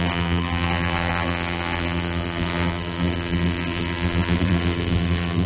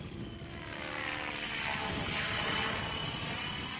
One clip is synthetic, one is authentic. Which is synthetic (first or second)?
first